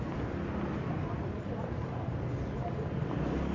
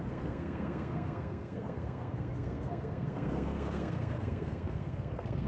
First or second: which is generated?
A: second